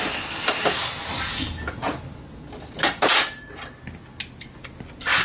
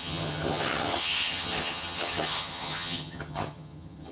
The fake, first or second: second